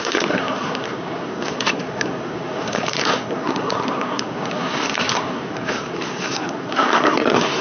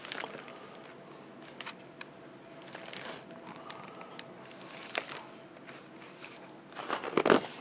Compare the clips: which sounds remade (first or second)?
first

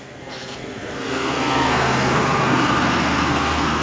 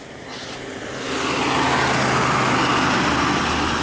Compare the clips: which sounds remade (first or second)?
first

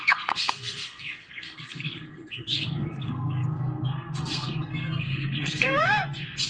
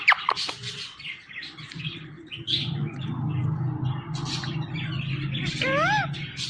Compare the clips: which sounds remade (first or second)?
first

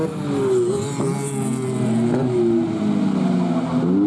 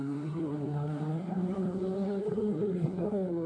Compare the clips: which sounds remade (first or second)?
second